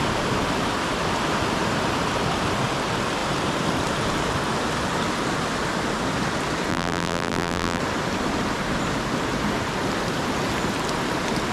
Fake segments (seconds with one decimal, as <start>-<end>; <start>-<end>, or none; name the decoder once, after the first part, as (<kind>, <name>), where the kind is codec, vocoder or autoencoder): 6.7-7.8 (vocoder, BigVGAN v2)